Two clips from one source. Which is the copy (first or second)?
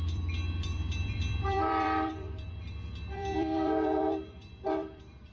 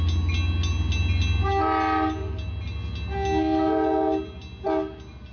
first